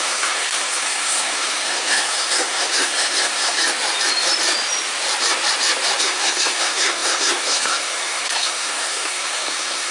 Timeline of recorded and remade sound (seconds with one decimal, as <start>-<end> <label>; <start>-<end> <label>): 0.0-3.6 remade; 3.6-6.0 recorded; 6.0-9.9 remade